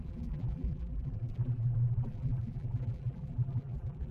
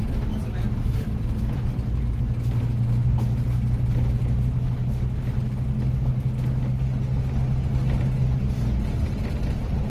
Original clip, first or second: second